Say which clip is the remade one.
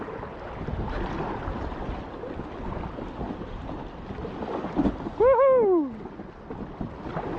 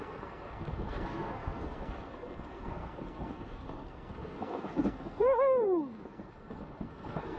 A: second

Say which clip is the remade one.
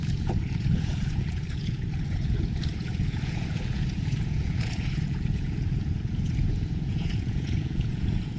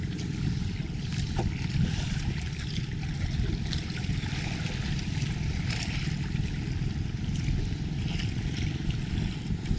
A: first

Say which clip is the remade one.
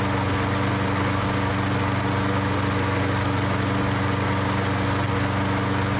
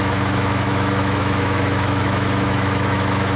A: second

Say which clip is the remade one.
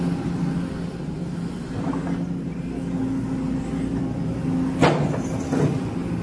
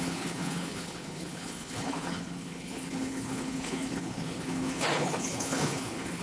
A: second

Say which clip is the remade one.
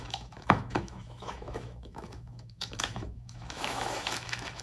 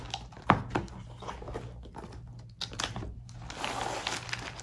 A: first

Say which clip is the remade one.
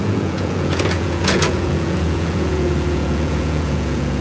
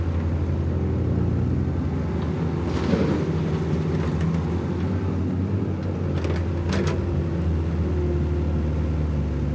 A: first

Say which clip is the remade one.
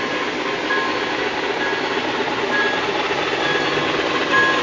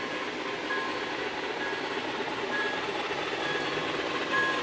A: second